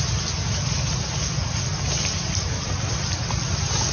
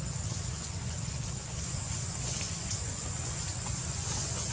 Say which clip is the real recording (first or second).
first